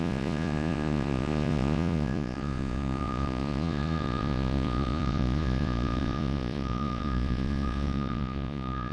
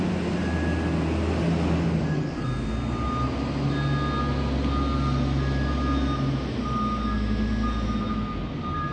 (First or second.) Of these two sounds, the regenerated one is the first